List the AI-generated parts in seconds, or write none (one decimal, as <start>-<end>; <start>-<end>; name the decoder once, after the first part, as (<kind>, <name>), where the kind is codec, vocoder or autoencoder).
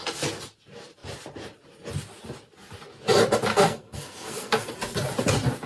3.5-4.7 (codec, SNAC)